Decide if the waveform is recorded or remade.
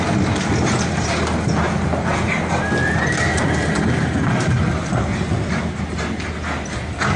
recorded